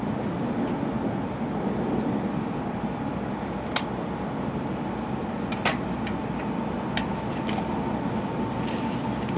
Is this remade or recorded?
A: recorded